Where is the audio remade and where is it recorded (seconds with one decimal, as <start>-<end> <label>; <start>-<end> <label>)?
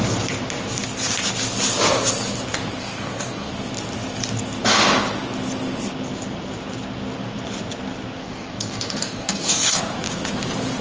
0.0-2.8 recorded; 2.8-3.5 remade; 3.5-8.2 recorded; 8.2-9.8 remade; 9.8-10.8 recorded